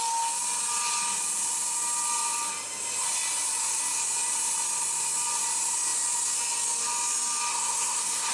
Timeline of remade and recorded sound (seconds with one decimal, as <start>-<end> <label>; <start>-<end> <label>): 0.0-7.5 recorded; 7.5-8.3 remade